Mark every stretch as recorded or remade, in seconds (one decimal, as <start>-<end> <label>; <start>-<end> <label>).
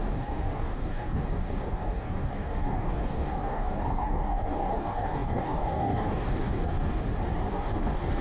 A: 0.0-7.0 remade; 7.0-7.5 recorded; 7.5-8.2 remade